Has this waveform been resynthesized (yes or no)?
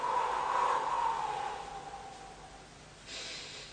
no